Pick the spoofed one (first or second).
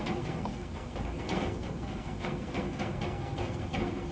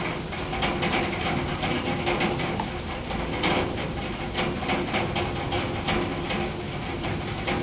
first